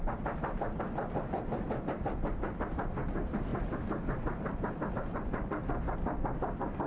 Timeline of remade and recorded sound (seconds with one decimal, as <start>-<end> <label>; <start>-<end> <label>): 0.0-6.9 recorded